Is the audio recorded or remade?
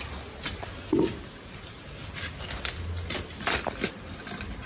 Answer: recorded